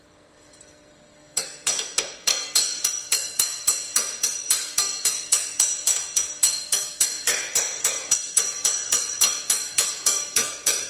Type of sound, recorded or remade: remade